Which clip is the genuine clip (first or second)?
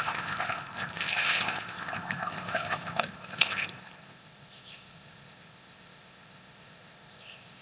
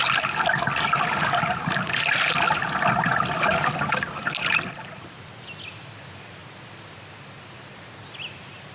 second